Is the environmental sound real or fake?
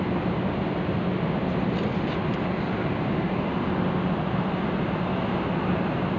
real